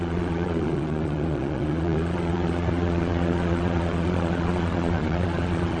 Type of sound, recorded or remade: remade